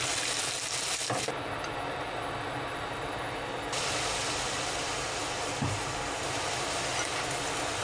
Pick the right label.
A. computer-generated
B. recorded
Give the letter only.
B